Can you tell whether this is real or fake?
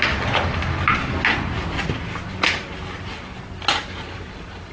real